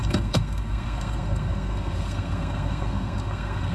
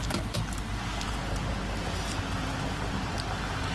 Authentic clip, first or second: second